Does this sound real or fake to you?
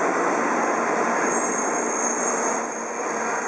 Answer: real